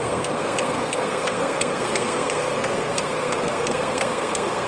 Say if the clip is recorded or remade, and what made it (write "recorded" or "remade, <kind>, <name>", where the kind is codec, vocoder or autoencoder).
remade, codec, SNAC